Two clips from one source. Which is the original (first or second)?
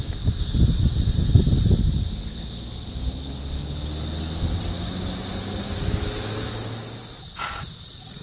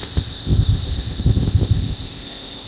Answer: first